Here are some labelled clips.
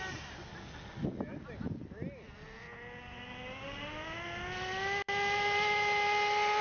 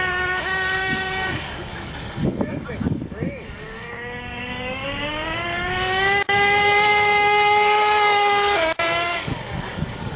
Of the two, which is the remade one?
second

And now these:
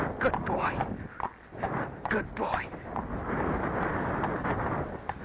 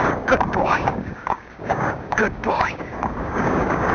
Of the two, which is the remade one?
second